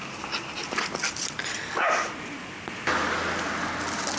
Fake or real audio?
real